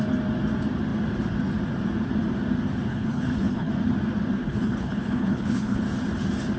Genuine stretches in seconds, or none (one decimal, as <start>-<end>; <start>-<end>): 0.0-2.9; 3.7-4.4; 5.8-6.6